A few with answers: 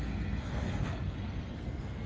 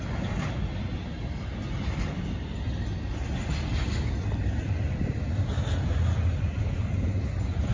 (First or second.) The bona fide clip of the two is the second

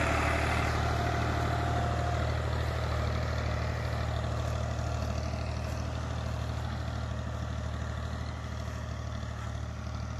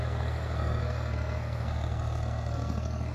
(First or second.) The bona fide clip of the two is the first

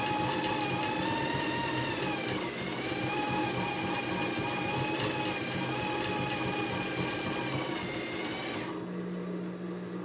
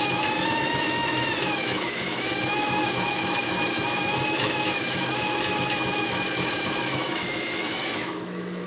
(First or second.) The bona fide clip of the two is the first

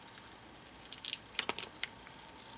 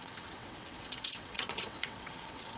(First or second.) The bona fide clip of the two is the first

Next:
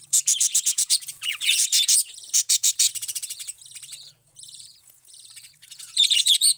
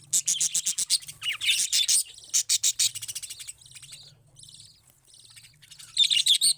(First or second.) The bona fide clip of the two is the second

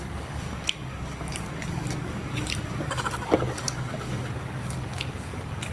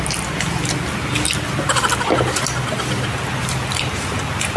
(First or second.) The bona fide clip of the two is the second